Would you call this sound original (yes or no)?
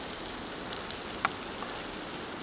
yes